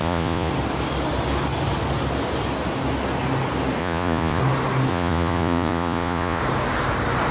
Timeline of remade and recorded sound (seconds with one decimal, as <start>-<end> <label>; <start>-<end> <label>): 0.0-0.5 remade; 0.5-3.8 recorded; 3.8-4.4 remade; 4.4-4.9 recorded; 4.9-6.4 remade; 6.4-7.3 recorded